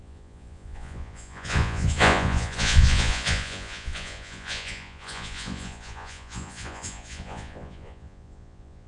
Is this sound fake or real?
fake